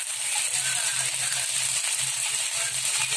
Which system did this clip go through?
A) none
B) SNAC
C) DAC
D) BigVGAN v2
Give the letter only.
A